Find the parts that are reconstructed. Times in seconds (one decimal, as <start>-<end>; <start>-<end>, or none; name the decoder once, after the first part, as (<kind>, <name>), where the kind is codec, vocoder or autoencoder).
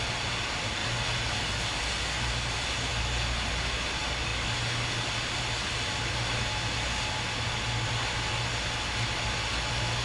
none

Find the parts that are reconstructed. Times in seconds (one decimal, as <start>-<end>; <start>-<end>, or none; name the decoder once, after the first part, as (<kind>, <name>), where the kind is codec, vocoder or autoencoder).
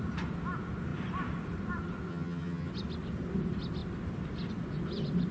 2.1-2.7 (vocoder, HiFi-GAN)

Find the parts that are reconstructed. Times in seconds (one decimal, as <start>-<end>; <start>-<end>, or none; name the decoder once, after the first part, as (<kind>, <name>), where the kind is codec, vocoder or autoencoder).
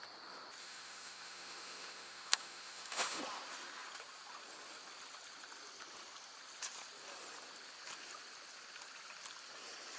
0.6-3.2 (autoencoder, DAC-VAE)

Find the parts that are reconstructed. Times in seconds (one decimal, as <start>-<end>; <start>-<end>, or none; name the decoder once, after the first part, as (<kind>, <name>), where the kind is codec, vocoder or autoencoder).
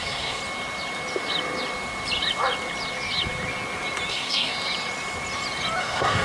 0.0-0.4 (codec, SNAC); 4.1-4.5; 5.8-6.2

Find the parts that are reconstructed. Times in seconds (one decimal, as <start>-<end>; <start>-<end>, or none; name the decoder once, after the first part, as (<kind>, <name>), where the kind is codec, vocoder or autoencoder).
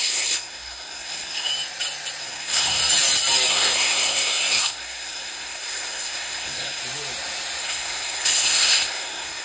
0.0-1.5 (codec, SNAC); 2.2-2.8; 3.5-6.8; 7.6-9.4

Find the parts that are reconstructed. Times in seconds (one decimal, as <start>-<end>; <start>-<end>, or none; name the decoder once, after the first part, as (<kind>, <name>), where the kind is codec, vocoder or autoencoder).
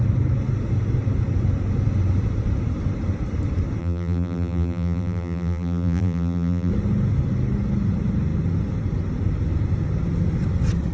3.8-6.7 (vocoder, BigVGAN v2)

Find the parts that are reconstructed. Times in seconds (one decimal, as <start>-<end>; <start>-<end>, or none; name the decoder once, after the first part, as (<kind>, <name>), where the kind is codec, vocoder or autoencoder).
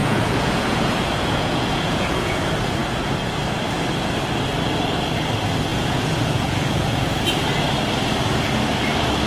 0.0-2.4 (vocoder, Vocos); 5.7-7.2